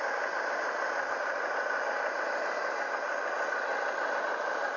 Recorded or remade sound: recorded